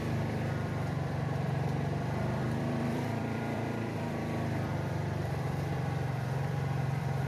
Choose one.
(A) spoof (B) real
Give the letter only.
A